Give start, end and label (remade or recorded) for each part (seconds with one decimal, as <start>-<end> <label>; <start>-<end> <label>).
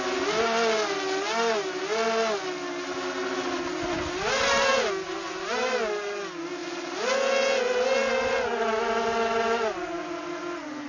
0.0-10.9 recorded